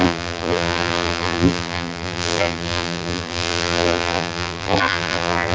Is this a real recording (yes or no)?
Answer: no